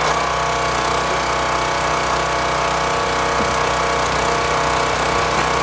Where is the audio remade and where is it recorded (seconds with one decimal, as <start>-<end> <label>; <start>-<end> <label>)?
0.0-5.6 recorded